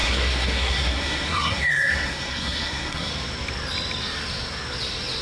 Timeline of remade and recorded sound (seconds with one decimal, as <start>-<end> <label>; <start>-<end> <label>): 0.0-3.1 remade; 3.1-5.2 recorded